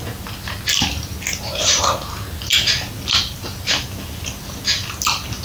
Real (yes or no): yes